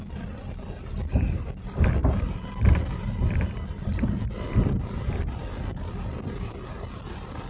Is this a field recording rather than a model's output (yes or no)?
yes